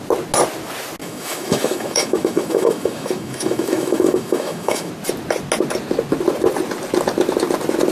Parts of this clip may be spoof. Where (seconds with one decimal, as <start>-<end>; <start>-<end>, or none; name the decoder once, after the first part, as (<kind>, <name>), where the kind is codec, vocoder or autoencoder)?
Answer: 1.0-4.9 (autoencoder, DAC-VAE)